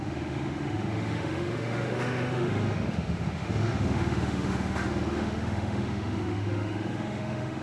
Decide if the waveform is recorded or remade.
remade